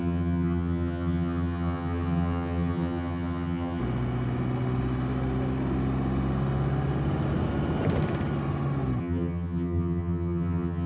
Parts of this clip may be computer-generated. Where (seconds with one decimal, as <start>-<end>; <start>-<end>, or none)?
0.0-3.8; 9.0-10.9